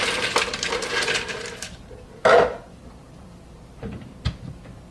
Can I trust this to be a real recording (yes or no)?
no